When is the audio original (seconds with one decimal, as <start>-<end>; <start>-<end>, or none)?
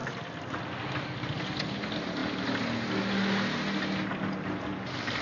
0.0-5.2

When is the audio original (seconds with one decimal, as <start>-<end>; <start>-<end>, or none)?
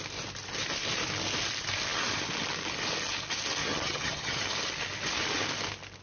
0.0-3.6; 4.4-6.0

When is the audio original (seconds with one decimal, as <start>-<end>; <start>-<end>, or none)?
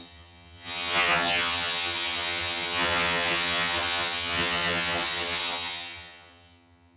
none